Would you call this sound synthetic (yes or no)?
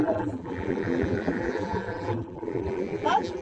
yes